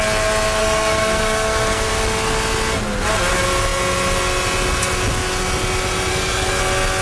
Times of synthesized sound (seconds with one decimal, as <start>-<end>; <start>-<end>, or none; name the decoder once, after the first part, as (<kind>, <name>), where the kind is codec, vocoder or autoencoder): 0.6-1.9 (codec, SNAC); 6.1-6.6